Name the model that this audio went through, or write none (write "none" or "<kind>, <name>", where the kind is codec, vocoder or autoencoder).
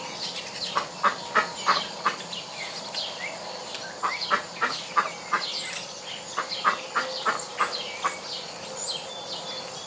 none